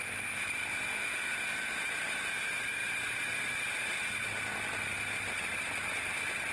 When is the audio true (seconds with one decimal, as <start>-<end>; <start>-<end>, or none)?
0.0-0.9; 1.5-6.5